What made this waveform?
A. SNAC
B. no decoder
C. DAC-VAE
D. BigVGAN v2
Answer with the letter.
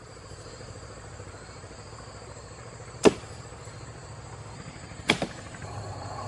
D